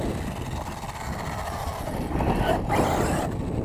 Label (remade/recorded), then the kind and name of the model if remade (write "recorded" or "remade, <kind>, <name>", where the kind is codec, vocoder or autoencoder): recorded